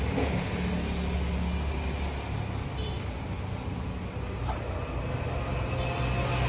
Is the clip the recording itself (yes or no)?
yes